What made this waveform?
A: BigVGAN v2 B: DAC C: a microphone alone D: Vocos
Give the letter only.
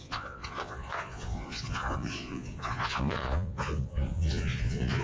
D